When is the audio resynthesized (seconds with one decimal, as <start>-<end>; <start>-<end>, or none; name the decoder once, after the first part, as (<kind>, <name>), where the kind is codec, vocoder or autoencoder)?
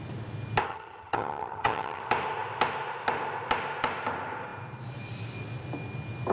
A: 0.7-2.0 (vocoder, HiFi-GAN)